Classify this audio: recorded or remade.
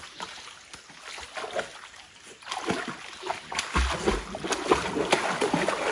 recorded